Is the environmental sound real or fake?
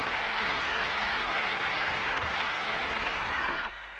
fake